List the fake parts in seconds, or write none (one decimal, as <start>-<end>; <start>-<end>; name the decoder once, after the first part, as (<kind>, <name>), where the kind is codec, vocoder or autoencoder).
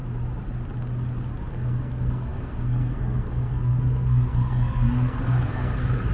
1.5-6.1 (codec, SNAC)